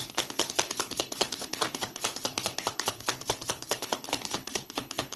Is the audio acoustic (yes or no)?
no